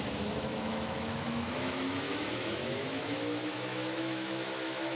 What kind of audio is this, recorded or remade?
remade